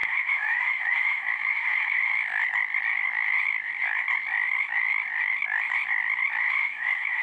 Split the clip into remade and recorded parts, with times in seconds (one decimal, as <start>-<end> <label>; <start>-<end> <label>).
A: 0.0-2.1 remade; 2.1-6.4 recorded; 6.4-7.2 remade